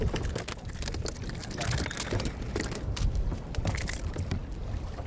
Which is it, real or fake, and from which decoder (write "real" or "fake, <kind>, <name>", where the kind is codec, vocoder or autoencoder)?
real